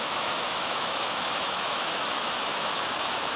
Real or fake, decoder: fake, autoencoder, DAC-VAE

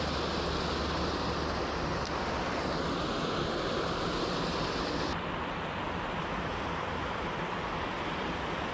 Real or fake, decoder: real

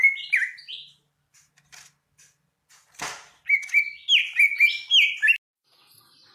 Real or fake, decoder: real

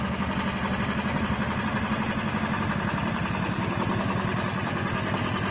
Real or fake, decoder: real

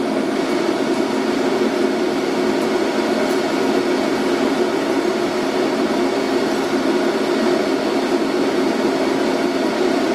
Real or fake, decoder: real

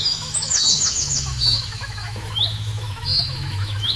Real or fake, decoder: fake, autoencoder, DAC-VAE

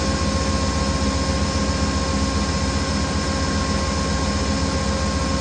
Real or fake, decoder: real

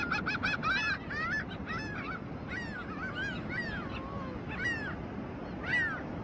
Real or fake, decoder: real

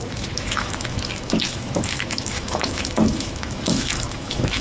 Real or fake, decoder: fake, autoencoder, DAC-VAE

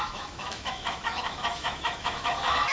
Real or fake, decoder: fake, autoencoder, DAC-VAE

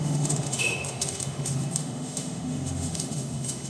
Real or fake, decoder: fake, autoencoder, DAC-VAE